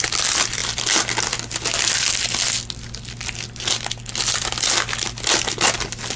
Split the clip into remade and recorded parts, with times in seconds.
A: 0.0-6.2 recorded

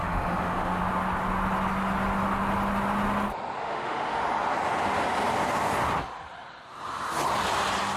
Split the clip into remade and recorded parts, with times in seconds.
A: 0.0-0.8 remade; 0.8-3.6 recorded; 3.6-4.2 remade; 4.2-8.0 recorded

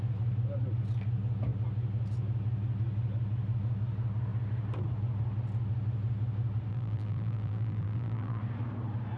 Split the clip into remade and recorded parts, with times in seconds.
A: 0.0-6.7 recorded; 6.7-8.4 remade; 8.4-9.2 recorded